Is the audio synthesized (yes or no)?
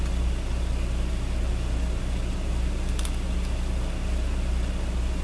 no